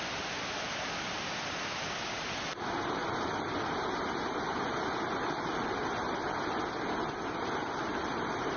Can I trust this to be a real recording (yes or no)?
yes